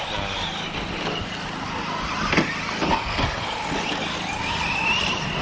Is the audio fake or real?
real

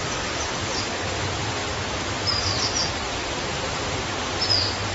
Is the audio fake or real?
fake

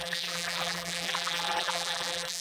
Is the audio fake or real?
fake